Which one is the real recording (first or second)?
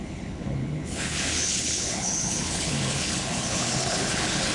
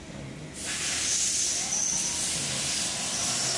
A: second